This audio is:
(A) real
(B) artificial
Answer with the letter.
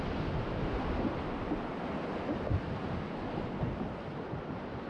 A